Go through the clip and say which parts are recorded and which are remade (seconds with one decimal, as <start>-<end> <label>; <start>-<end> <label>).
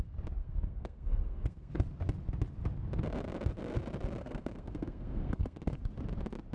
0.0-0.4 recorded; 0.4-1.8 remade; 1.8-4.2 recorded; 4.2-5.8 remade; 5.8-6.5 recorded